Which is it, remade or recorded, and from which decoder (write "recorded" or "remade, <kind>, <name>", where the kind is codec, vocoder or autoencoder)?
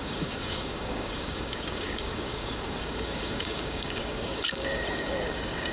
remade, codec, DAC